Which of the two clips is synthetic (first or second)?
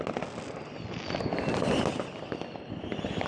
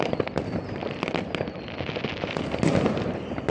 second